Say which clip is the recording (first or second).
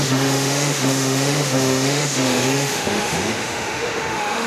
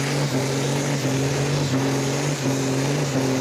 second